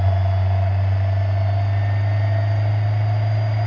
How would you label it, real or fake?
real